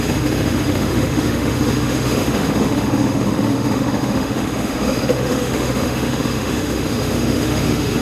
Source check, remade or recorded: remade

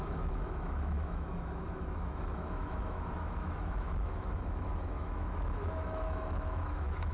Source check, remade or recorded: remade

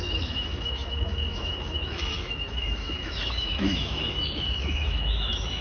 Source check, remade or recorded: remade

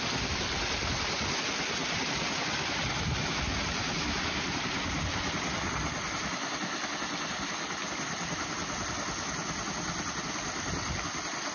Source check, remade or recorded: recorded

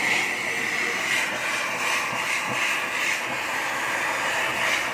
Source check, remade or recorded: recorded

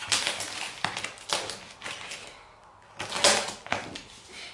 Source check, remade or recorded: recorded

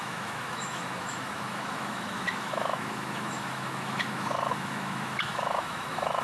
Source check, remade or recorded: remade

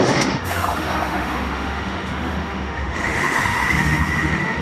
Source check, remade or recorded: remade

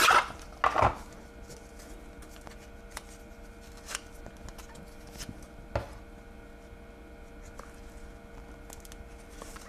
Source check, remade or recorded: recorded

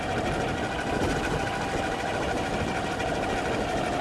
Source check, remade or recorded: recorded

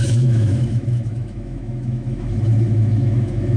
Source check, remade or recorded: remade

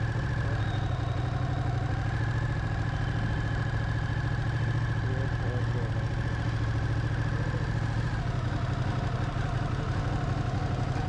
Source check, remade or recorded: recorded